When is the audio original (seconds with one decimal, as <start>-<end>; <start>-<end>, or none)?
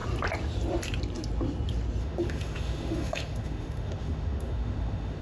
0.0-2.0